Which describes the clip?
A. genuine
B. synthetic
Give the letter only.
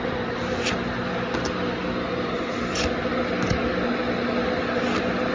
A